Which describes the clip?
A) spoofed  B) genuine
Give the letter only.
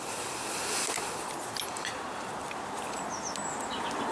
B